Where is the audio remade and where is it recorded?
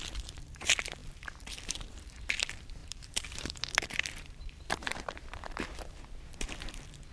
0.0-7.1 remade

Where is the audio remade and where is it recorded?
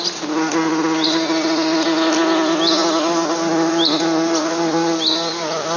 0.0-5.8 recorded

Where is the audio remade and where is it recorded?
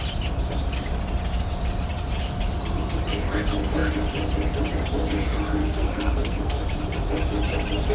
0.0-5.6 recorded; 5.6-6.6 remade; 6.6-7.9 recorded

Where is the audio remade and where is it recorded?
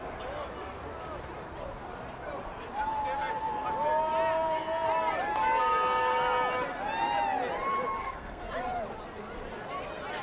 0.0-8.0 recorded; 8.0-8.5 remade; 8.5-10.2 recorded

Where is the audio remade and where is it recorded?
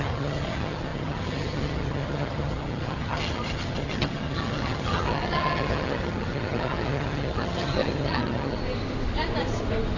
0.0-8.6 remade; 8.6-10.0 recorded